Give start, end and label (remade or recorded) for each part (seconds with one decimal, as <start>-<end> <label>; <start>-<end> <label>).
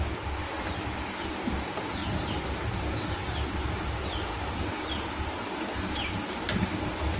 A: 0.0-7.2 recorded